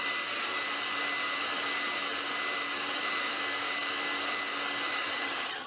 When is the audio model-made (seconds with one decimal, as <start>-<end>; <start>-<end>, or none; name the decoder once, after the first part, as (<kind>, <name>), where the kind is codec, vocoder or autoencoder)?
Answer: 4.9-5.7 (vocoder, HiFi-GAN)